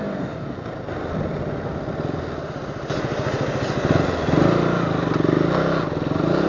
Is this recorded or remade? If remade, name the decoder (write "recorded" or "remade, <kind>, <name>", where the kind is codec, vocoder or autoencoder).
recorded